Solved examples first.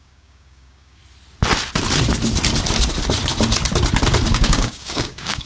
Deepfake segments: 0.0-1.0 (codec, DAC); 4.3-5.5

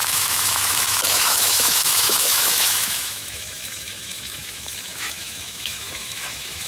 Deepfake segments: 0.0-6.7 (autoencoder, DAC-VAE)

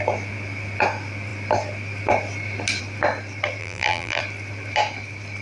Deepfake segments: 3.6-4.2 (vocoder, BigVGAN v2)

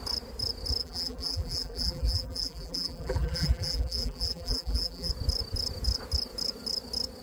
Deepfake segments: 0.8-5.1 (vocoder, BigVGAN v2)

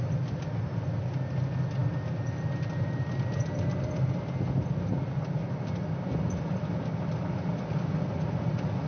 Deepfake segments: none

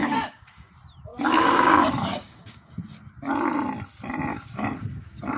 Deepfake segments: 0.0-0.7 (codec, DAC); 1.1-2.8; 4.3-5.4